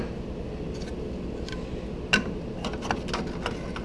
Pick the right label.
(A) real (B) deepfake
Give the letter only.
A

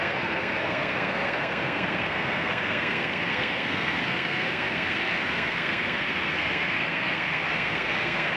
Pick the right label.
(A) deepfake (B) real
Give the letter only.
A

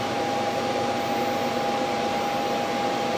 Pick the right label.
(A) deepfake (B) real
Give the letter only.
B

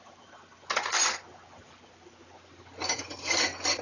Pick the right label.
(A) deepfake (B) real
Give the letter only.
B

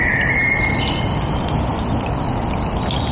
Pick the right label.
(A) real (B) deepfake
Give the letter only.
A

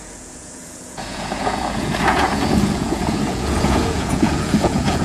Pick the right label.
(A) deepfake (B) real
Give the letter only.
A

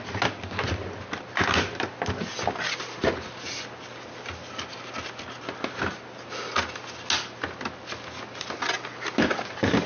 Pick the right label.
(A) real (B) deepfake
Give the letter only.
A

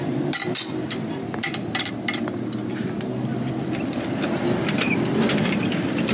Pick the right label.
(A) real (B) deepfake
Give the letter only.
A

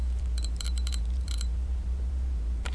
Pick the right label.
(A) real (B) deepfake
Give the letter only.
B